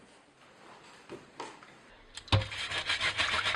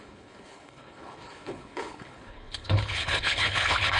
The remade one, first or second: second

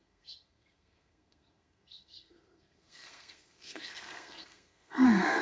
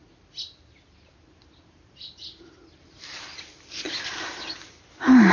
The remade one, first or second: first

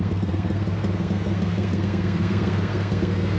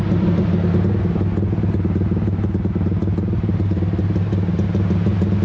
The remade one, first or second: first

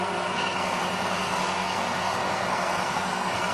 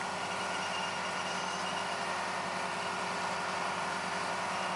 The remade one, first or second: first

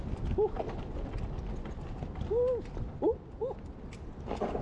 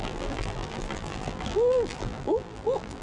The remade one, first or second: second